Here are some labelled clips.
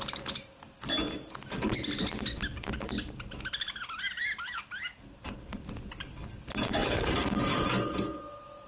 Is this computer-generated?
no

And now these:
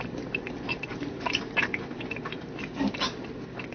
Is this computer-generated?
no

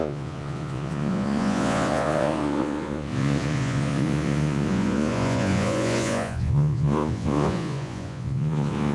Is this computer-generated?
yes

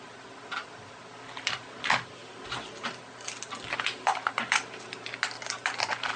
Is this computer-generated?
no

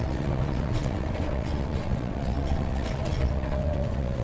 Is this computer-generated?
yes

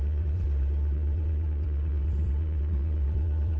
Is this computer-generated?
yes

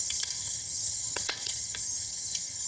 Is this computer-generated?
yes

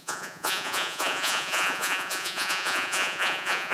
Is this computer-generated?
yes